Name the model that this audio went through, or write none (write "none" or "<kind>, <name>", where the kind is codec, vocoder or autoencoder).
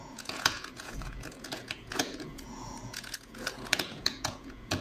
vocoder, Vocos